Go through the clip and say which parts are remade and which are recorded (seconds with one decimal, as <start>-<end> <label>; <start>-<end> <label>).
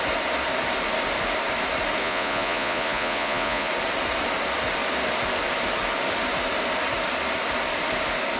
0.0-2.0 recorded; 2.0-3.7 remade; 3.7-8.4 recorded